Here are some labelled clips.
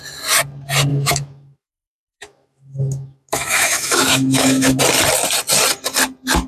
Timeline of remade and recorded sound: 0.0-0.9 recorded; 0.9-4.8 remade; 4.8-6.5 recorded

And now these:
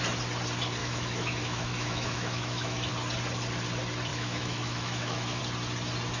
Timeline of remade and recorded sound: 0.0-0.8 recorded; 0.8-2.9 remade; 2.9-4.1 recorded; 4.1-5.4 remade; 5.4-6.2 recorded

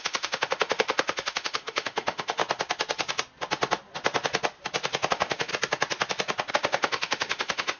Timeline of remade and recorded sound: 0.0-2.4 remade; 2.4-5.1 recorded; 5.1-5.5 remade; 5.5-6.5 recorded; 6.5-7.8 remade